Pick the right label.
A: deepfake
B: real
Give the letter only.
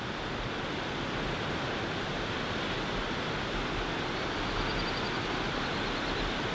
B